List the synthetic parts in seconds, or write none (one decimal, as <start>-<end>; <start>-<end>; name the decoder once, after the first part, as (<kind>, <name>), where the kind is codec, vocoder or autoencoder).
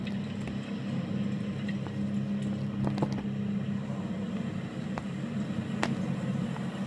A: none